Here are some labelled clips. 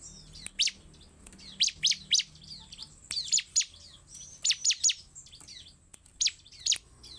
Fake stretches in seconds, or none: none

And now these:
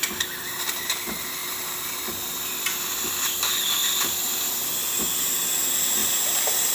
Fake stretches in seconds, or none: 1.4-2.2 (vocoder, BigVGAN v2); 3.8-4.3; 6.0-6.7

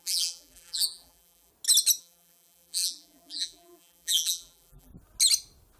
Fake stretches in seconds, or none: 0.0-1.5 (vocoder, BigVGAN v2); 2.0-4.9